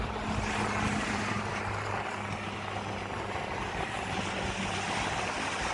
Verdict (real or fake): real